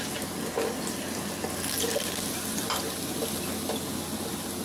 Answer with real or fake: real